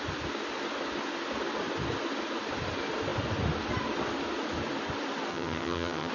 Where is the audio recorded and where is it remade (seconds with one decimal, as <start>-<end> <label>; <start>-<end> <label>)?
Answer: 0.0-5.3 recorded; 5.3-6.1 remade